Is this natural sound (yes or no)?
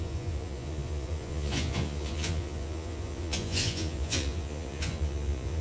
no